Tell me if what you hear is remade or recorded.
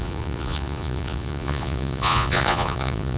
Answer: remade